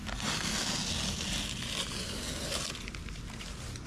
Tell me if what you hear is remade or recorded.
recorded